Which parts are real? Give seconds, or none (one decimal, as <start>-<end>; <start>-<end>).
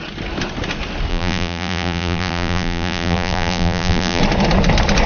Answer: 0.0-1.1; 4.2-5.1